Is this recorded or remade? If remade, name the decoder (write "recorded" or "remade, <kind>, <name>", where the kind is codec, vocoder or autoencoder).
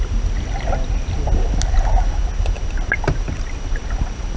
recorded